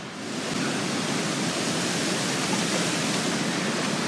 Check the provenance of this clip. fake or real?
real